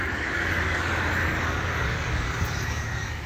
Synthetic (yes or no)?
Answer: yes